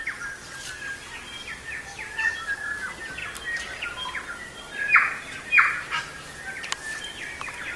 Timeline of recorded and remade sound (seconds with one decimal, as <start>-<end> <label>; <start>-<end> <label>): 0.0-0.4 remade; 0.4-2.3 recorded; 2.3-3.2 remade; 3.2-6.0 recorded; 6.0-7.8 remade